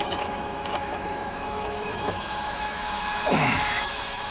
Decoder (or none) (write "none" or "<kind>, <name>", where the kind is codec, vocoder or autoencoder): autoencoder, DAC-VAE